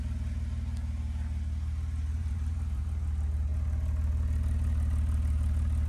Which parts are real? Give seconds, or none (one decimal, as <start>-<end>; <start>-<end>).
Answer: 0.0-2.2; 2.8-5.9